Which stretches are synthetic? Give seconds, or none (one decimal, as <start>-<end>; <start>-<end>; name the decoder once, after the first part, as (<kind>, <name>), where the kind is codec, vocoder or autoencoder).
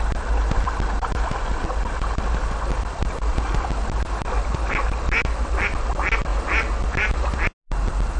none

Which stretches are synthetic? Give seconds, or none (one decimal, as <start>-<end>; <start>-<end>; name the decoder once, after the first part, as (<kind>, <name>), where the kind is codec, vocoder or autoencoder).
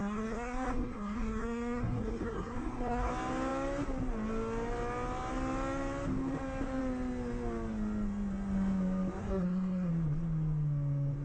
0.0-3.1 (codec, SNAC); 9.2-9.9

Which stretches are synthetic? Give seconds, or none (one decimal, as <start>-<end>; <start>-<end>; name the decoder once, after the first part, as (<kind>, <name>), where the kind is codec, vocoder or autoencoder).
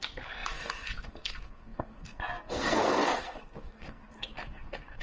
0.0-5.0 (codec, SNAC)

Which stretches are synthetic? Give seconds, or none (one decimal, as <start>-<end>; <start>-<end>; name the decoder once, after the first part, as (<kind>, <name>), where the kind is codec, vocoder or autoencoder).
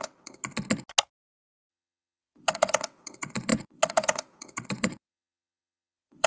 0.0-0.4 (vocoder, WaveNeXt); 1.7-6.3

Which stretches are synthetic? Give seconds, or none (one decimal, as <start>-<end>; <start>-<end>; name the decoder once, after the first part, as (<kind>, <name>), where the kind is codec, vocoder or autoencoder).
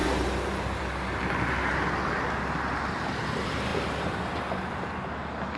0.0-0.8 (vocoder, BigVGAN v2)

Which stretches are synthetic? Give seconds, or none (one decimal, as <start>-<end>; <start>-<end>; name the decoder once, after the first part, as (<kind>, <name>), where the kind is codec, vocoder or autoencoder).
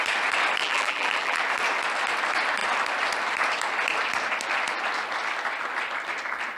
0.6-1.4 (vocoder, BigVGAN v2)